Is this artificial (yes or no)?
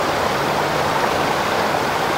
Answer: yes